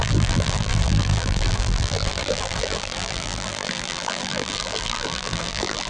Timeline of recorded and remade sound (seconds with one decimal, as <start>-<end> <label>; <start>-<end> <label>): 0.0-5.9 remade